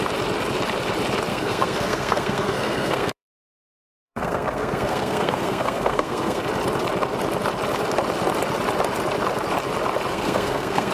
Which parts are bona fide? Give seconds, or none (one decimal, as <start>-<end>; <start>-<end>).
0.0-1.3; 6.4-10.1